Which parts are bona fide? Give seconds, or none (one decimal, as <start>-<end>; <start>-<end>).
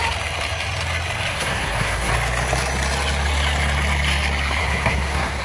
0.0-1.3; 2.1-4.6